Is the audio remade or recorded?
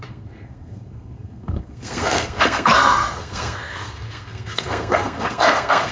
remade